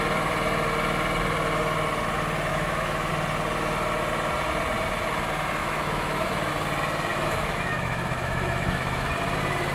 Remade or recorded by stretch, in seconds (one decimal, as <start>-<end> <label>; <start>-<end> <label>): 0.0-2.5 recorded; 2.5-3.1 remade; 3.1-5.6 recorded; 5.6-6.5 remade; 6.5-7.1 recorded; 7.1-9.1 remade; 9.1-9.7 recorded